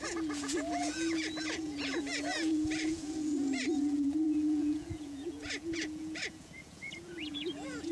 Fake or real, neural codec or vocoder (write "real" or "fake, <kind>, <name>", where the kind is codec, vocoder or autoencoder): fake, vocoder, Vocos